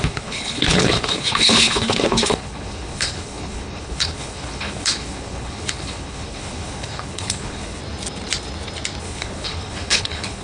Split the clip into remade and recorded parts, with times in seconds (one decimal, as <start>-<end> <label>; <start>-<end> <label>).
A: 0.0-7.8 remade; 7.8-9.0 recorded; 9.0-10.4 remade